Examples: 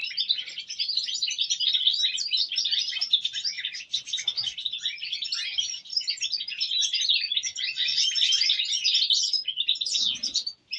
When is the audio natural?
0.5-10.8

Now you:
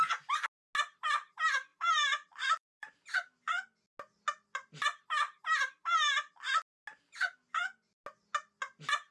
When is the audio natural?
0.0-1.7; 3.0-9.1